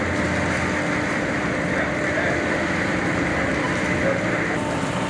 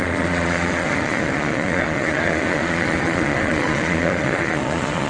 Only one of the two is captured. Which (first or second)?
first